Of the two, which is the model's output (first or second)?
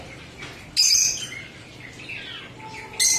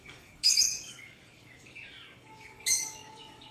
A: second